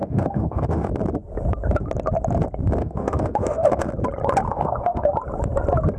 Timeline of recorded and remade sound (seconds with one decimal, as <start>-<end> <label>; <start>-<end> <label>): 0.0-0.9 remade; 0.9-2.8 recorded; 2.8-3.9 remade; 3.9-4.5 recorded; 4.5-5.1 remade; 5.1-6.0 recorded